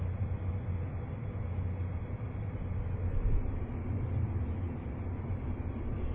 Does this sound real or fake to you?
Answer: real